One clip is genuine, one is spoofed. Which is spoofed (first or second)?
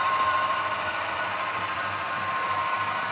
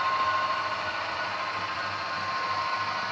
first